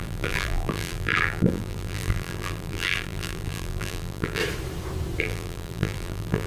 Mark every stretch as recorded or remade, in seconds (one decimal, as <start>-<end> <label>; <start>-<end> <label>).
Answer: 0.0-4.4 remade; 4.4-5.2 recorded; 5.2-6.5 remade